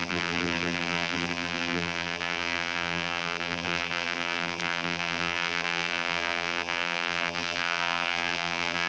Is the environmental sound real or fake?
fake